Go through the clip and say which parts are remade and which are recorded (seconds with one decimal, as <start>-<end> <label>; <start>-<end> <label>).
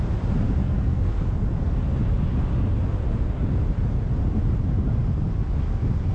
0.0-0.6 recorded; 0.6-1.2 remade; 1.2-6.1 recorded